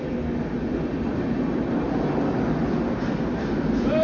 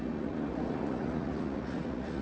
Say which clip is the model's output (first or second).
second